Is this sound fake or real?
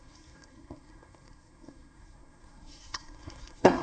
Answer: fake